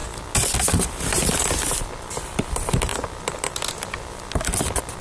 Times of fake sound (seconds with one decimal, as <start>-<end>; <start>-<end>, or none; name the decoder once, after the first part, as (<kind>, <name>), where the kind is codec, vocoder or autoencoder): none